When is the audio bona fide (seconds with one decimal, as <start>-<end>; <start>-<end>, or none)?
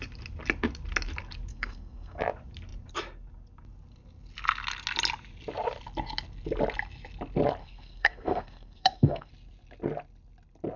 0.0-1.5; 2.2-7.6; 9.3-10.8